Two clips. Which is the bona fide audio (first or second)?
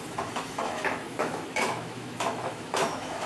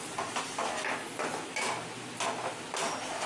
second